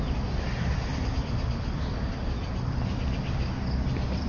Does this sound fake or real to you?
real